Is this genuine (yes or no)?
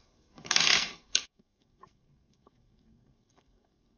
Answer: no